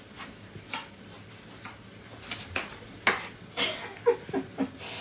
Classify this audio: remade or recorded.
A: recorded